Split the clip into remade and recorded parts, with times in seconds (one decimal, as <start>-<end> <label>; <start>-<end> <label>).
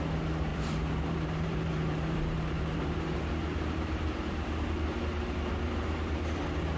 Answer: 0.0-0.5 recorded; 0.5-4.6 remade; 4.6-6.8 recorded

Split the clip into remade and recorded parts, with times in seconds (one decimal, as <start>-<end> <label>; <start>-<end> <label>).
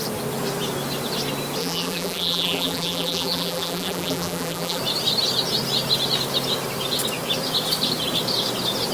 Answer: 0.0-1.6 recorded; 1.6-4.8 remade; 4.8-8.9 recorded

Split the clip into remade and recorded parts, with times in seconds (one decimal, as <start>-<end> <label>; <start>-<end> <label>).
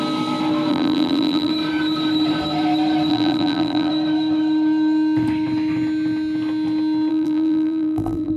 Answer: 0.0-0.7 recorded; 0.7-1.5 remade; 1.5-3.1 recorded; 3.1-3.9 remade; 3.9-7.1 recorded; 7.1-8.4 remade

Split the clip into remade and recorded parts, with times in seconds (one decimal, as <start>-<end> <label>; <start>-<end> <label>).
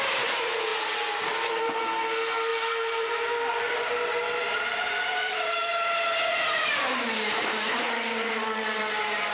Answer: 0.0-0.7 remade; 0.7-1.6 recorded; 1.6-5.7 remade; 5.7-6.3 recorded; 6.3-9.3 remade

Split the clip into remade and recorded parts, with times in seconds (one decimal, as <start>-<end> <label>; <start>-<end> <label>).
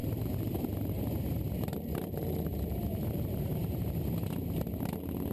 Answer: 0.0-2.1 remade; 2.1-2.5 recorded; 2.5-4.0 remade; 4.0-5.3 recorded